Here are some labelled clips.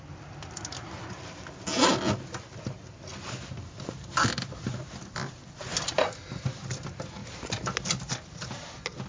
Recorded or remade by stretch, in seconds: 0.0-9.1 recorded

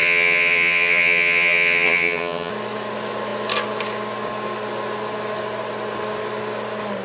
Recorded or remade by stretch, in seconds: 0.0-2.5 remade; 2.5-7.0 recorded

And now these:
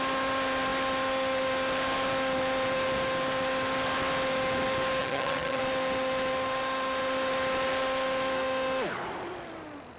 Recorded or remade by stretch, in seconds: 0.0-5.0 recorded; 5.0-5.6 remade; 5.6-10.0 recorded

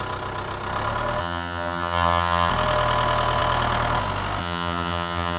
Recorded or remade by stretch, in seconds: 0.0-1.2 recorded; 1.2-2.5 remade; 2.5-4.4 recorded; 4.4-5.4 remade

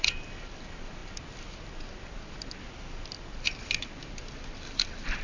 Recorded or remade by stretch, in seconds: 0.0-5.2 recorded